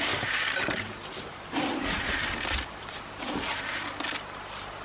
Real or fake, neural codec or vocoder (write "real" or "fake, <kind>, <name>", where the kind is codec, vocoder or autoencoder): fake, vocoder, BigVGAN v2